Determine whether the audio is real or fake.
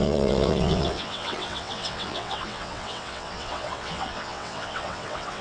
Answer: fake